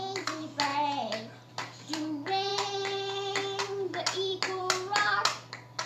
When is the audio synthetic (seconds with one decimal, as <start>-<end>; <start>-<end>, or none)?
none